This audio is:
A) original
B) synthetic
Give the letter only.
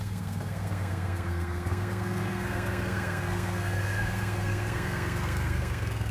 B